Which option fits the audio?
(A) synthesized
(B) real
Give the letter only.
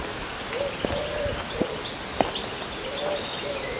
B